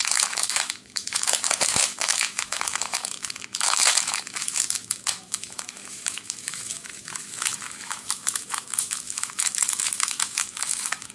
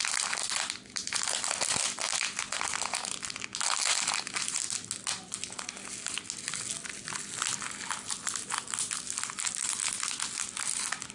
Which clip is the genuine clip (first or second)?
second